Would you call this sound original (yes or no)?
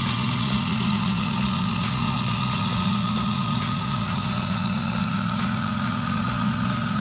no